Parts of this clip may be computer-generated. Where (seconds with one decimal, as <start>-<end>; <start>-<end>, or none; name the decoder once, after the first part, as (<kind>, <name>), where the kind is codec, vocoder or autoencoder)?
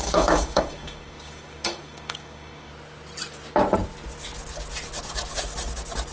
0.0-2.7 (codec, DAC)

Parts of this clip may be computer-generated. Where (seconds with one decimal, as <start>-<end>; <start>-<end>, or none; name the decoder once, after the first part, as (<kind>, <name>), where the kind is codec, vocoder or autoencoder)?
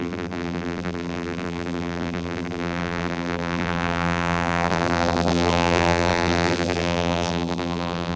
0.0-8.2 (vocoder, BigVGAN v2)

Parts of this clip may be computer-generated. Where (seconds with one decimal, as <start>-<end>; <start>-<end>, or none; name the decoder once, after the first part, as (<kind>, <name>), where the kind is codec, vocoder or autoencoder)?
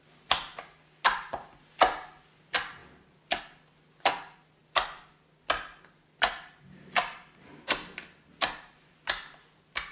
none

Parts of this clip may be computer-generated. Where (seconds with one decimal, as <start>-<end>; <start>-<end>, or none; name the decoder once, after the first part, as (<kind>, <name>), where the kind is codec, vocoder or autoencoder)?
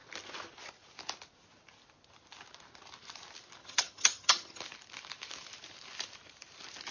3.6-4.6 (vocoder, HiFi-GAN)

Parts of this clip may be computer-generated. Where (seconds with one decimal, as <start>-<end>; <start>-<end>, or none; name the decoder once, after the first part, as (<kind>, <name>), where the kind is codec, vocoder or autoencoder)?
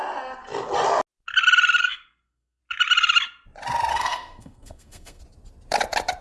1.8-2.6 (codec, SNAC); 3.9-5.2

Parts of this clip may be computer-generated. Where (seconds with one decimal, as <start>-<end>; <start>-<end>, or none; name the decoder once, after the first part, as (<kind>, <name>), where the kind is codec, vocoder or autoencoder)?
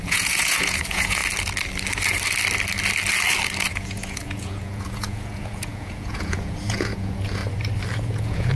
0.0-1.2 (vocoder, Vocos); 3.7-7.4; 8.0-8.6